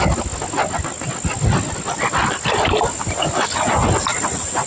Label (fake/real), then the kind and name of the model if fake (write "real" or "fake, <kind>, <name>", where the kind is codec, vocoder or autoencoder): real